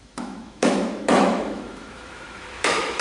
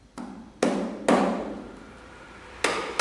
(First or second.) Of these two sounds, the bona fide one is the second